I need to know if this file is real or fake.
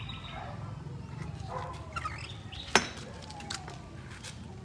real